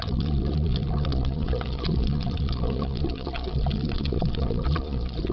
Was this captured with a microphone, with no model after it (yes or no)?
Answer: no